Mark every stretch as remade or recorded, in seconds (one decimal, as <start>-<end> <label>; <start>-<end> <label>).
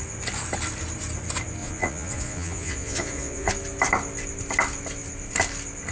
0.0-1.6 recorded; 1.6-3.5 remade; 3.5-5.9 recorded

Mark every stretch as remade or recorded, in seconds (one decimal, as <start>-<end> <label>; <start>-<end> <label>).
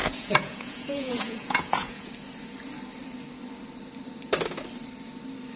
0.0-2.1 remade; 2.1-5.6 recorded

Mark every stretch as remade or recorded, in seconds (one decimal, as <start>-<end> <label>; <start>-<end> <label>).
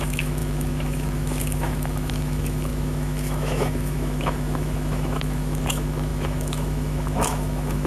0.0-7.9 remade